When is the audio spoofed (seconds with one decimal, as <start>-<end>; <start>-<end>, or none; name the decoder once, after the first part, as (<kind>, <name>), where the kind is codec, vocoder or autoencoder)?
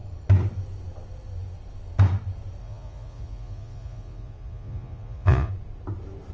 2.6-5.5 (vocoder, Vocos)